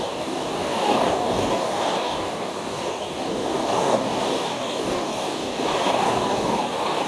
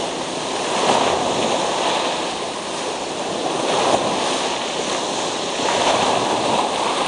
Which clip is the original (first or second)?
second